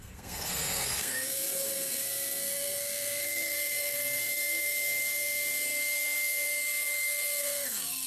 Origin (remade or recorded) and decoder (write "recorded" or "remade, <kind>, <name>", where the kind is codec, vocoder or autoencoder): remade, codec, SNAC